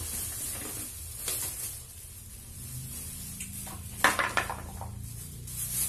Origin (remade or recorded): recorded